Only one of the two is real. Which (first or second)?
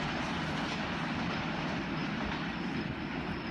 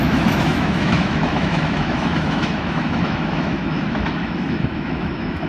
first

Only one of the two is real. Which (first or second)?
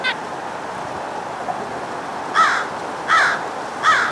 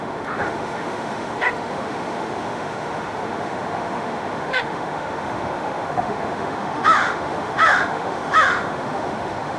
first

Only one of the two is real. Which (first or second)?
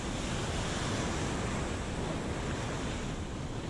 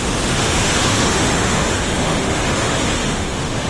first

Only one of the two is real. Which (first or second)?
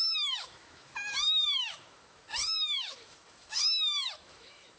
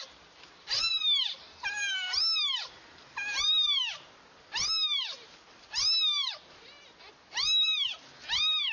second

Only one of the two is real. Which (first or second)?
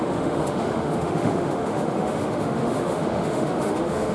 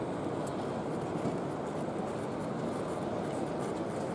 second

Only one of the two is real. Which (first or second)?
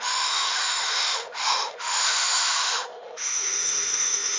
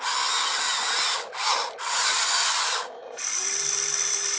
second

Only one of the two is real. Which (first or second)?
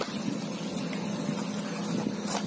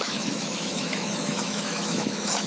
first